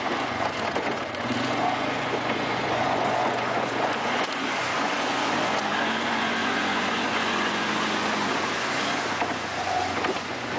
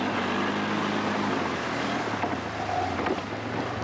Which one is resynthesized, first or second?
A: first